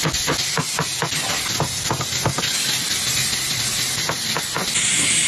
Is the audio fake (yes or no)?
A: no